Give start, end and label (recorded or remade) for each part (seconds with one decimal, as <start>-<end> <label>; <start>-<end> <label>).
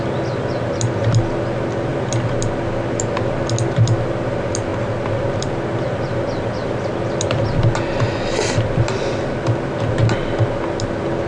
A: 0.0-11.3 recorded